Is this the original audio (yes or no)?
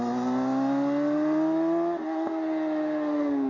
yes